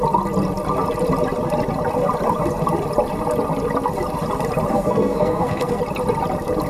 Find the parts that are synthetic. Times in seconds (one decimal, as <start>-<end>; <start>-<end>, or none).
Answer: 4.7-5.8